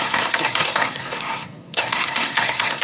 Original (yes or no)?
no